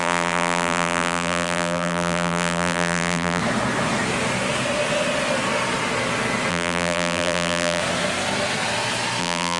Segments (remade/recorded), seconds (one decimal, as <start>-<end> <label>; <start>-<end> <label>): 0.0-3.4 remade; 3.4-6.5 recorded; 6.5-7.8 remade; 7.8-9.2 recorded; 9.2-9.6 remade